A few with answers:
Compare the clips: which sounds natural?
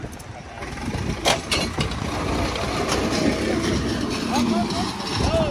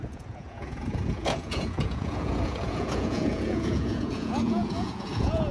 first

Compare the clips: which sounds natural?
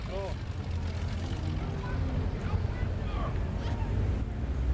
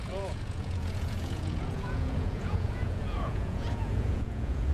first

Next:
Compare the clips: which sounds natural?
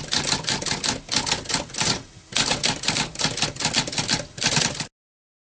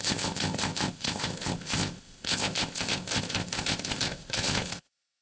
first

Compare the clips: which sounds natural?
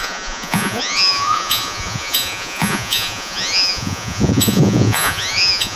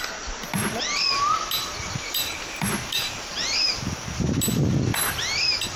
second